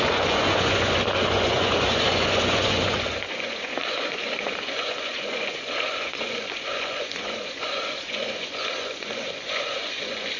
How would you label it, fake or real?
fake